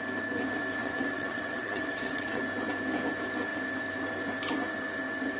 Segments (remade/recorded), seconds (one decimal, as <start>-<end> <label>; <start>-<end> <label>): 0.0-0.8 recorded; 0.8-2.4 remade; 2.4-5.4 recorded